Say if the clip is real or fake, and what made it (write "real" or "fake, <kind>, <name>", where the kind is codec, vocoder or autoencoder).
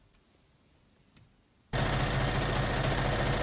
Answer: real